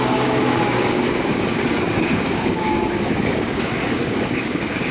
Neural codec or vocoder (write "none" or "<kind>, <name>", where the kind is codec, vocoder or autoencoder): codec, DAC